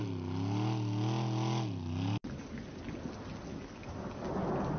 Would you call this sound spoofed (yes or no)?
no